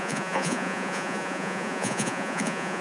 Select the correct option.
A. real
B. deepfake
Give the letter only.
B